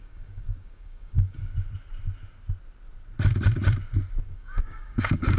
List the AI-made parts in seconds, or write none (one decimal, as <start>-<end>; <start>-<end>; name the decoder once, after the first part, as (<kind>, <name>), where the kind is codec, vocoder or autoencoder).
0.0-1.5 (codec, DAC); 4.2-5.4